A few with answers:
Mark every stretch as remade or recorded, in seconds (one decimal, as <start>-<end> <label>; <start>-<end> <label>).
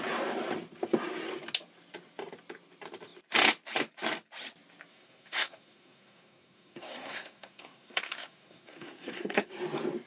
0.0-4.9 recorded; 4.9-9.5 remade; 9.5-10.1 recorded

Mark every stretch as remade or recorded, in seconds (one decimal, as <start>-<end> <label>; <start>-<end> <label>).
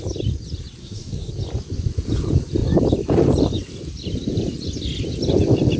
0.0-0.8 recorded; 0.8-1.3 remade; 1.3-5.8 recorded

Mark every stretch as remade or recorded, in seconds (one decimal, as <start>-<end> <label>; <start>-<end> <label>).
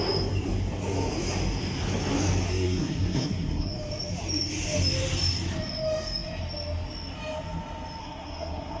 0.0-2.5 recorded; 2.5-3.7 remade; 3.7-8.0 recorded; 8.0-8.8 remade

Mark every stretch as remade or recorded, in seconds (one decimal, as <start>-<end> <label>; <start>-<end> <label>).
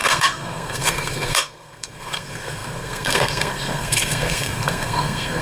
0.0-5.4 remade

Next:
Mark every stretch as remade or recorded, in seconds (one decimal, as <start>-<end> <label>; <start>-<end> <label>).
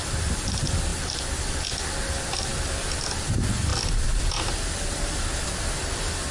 0.0-6.3 recorded